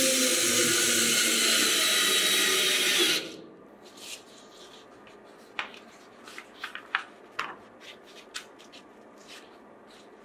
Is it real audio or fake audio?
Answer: real